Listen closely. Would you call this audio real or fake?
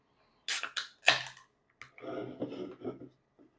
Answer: real